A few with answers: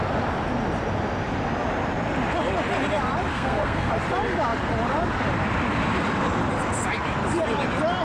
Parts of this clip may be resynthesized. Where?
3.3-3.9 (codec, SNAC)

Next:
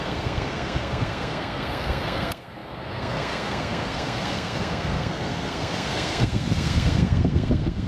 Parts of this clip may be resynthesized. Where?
0.0-7.9 (codec, SNAC)

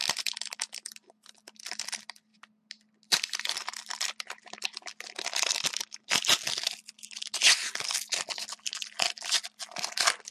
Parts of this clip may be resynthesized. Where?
none

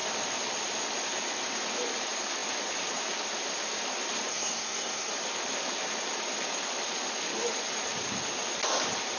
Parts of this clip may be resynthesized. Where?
4.3-5.1 (codec, SNAC)

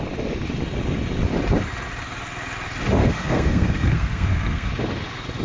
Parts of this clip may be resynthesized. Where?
3.0-4.7 (codec, SNAC)